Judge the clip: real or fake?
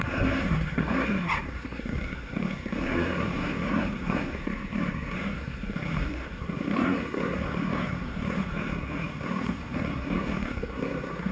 fake